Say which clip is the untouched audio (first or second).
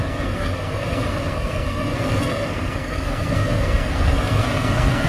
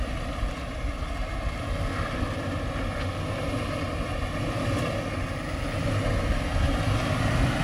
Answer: second